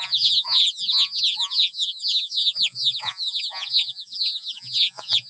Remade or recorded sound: remade